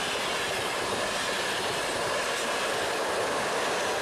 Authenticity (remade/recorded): recorded